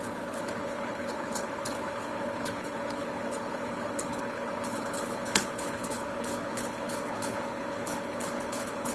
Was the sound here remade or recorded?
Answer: remade